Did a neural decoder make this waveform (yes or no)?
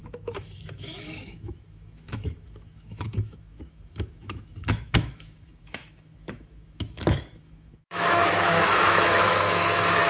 yes